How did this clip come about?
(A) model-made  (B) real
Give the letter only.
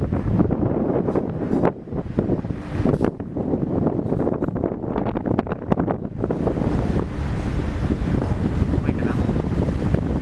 B